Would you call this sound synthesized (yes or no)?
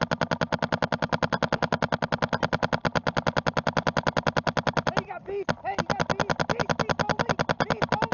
no